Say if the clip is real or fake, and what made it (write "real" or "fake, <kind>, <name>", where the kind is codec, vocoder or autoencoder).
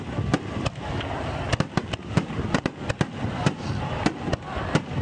real